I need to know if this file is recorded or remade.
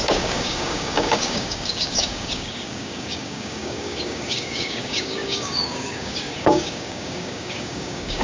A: remade